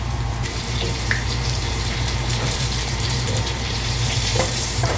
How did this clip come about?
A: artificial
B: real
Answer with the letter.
A